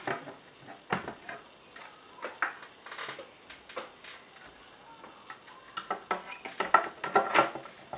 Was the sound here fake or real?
real